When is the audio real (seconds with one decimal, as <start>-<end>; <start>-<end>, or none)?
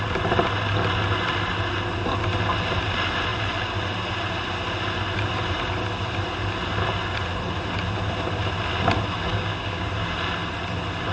0.0-9.3; 9.9-11.1